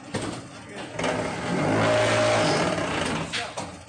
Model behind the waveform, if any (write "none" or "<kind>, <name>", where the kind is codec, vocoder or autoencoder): none